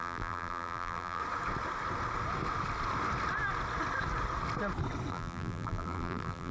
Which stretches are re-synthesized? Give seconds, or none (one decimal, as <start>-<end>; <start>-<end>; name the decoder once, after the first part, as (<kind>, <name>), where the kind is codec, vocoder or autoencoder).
0.0-1.2 (vocoder, BigVGAN v2); 5.1-6.5